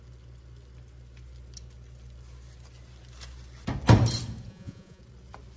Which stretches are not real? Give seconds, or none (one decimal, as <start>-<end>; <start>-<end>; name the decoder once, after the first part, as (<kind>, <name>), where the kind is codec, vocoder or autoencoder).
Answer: 4.5-5.0 (vocoder, Vocos)